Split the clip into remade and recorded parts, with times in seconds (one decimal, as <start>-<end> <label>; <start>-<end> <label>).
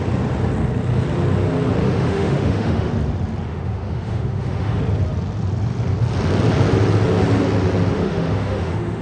0.0-1.8 recorded; 1.8-2.9 remade; 2.9-3.5 recorded; 3.5-4.8 remade; 4.8-7.9 recorded; 7.9-9.0 remade